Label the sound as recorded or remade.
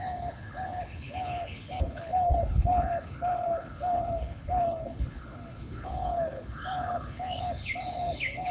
remade